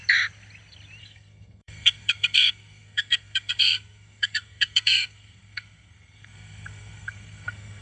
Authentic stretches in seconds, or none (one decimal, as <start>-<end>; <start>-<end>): 0.0-1.0